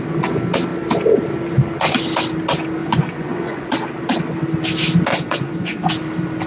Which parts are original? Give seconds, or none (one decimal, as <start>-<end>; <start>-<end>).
0.0-2.8; 3.7-5.1; 5.9-6.5